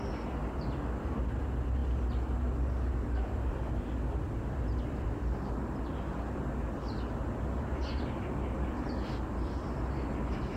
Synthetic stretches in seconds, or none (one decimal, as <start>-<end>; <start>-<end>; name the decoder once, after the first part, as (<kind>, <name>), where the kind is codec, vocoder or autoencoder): none